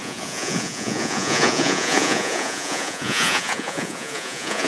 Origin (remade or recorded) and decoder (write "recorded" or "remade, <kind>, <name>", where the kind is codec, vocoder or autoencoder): remade, vocoder, Vocos